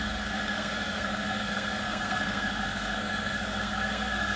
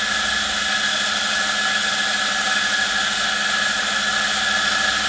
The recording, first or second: second